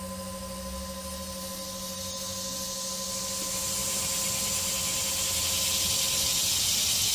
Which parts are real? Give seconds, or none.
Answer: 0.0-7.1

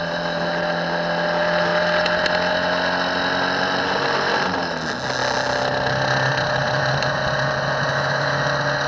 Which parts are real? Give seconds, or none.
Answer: 0.0-7.9; 8.4-8.9

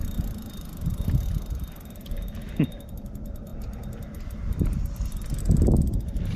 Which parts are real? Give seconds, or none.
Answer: 0.0-6.4

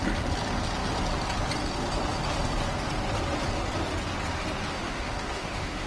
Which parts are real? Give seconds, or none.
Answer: 0.0-4.7